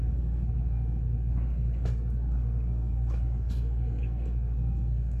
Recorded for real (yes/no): no